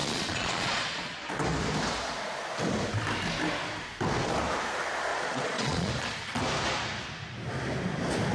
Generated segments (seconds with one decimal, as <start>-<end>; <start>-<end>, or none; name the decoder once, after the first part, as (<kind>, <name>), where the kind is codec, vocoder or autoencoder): 0.0-1.3 (vocoder, Vocos); 5.1-5.9